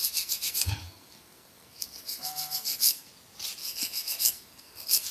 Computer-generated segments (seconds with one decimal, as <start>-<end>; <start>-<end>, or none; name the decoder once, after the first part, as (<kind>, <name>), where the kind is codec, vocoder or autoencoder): 0.0-3.1 (codec, SNAC); 3.6-5.1